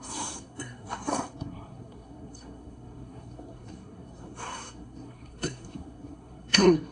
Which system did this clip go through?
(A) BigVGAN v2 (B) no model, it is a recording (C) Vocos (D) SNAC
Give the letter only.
D